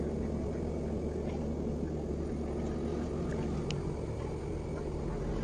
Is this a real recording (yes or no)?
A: yes